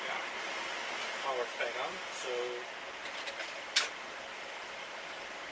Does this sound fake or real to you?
real